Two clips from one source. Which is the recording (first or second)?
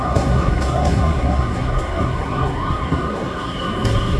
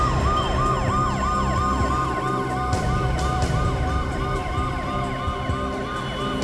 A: second